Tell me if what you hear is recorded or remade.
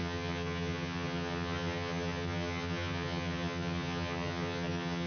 remade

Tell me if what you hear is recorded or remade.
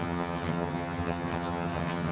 remade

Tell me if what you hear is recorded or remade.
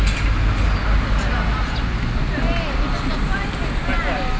recorded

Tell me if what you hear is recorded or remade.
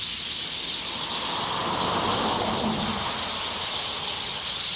recorded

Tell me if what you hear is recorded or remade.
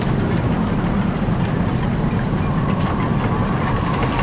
recorded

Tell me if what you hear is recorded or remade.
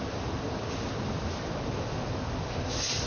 recorded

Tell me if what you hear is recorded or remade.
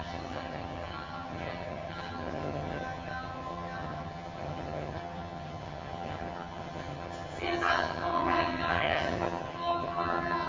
remade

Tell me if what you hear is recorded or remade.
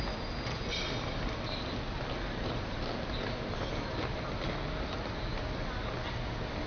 recorded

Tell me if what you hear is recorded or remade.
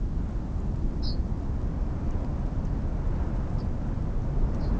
recorded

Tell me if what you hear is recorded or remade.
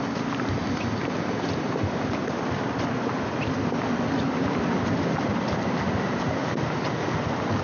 recorded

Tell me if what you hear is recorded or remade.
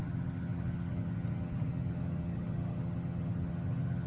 remade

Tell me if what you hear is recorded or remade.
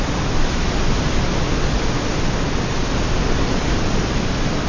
recorded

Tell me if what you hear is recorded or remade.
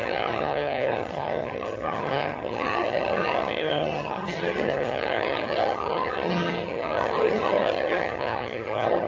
remade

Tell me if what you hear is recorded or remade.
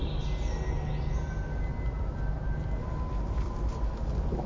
recorded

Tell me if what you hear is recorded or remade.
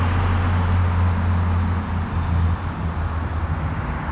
recorded